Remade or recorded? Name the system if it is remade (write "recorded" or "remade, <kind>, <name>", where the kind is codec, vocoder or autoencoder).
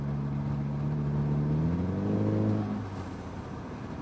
recorded